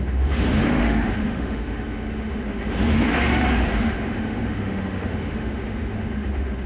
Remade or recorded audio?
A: remade